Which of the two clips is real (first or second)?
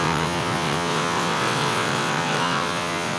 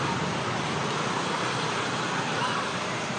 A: second